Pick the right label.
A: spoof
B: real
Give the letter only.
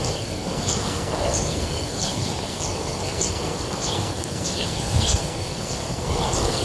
A